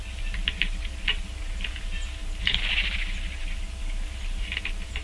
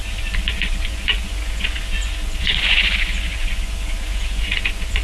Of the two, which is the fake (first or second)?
second